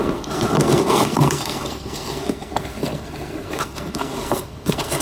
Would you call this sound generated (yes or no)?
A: yes